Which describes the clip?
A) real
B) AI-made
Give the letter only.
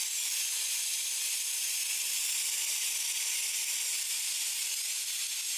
B